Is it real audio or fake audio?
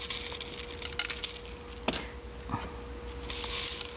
real